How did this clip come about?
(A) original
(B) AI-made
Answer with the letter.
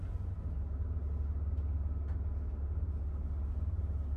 A